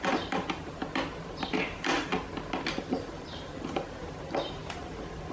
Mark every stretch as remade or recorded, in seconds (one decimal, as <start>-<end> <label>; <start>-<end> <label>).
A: 0.0-0.8 remade; 0.8-1.5 recorded; 1.5-2.1 remade; 2.1-2.7 recorded; 2.7-5.3 remade